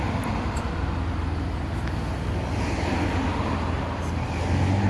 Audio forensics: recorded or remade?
recorded